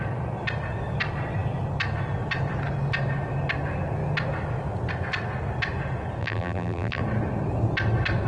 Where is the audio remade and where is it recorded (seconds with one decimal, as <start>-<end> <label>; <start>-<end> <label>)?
0.0-6.2 recorded; 6.2-7.0 remade; 7.0-8.3 recorded